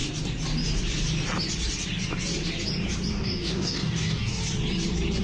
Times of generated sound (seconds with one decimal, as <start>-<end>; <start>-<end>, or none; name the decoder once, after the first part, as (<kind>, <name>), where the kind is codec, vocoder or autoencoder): 3.1-4.4 (codec, DAC)